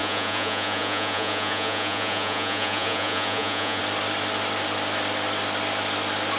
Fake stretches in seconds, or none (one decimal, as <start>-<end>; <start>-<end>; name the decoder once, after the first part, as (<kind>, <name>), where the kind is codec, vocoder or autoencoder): 0.0-3.8 (vocoder, Vocos)